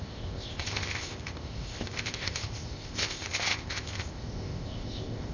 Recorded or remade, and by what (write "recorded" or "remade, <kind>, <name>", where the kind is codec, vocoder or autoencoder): remade, codec, ZipCodec